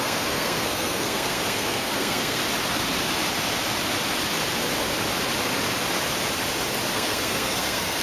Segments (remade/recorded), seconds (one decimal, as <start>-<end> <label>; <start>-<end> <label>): 0.0-2.4 remade; 2.4-6.9 recorded; 6.9-8.0 remade